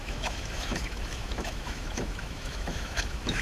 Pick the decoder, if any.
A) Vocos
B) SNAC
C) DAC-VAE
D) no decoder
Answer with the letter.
C